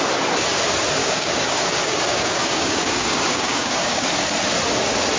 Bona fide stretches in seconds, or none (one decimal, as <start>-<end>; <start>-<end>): 0.0-1.0; 4.1-5.2